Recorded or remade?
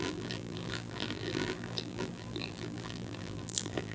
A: remade